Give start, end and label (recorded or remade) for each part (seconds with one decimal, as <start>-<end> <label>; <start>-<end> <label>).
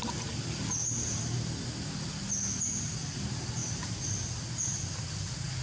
0.0-5.6 recorded